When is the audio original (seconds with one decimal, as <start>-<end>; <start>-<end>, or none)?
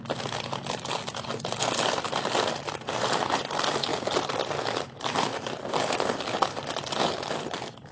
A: 0.0-7.9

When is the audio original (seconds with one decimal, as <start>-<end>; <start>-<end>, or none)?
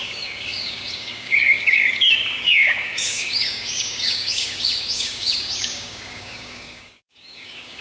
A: none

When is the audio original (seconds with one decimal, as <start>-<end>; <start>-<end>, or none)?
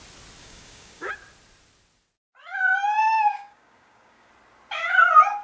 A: 0.0-0.4; 1.1-3.0; 4.3-5.4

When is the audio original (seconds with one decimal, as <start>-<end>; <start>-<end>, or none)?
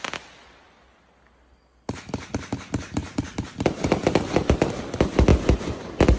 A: 0.0-6.2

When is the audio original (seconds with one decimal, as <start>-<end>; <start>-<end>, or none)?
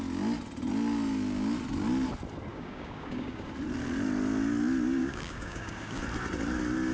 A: 0.0-2.5; 3.5-5.0; 6.0-6.9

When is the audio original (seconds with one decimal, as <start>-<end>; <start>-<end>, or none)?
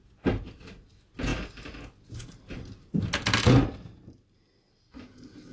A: 0.0-5.5